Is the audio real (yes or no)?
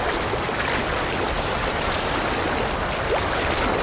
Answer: yes